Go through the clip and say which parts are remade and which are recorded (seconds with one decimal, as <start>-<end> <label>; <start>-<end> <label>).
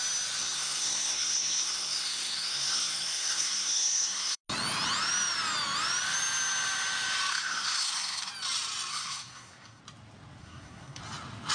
0.0-0.4 recorded; 0.4-4.4 remade; 4.4-7.3 recorded; 7.3-8.3 remade; 8.3-8.9 recorded; 8.9-9.8 remade; 9.8-10.4 recorded; 10.4-11.0 remade; 11.0-11.5 recorded